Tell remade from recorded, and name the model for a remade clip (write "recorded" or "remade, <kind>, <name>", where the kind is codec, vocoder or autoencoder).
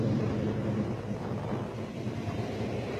remade, vocoder, BigVGAN v2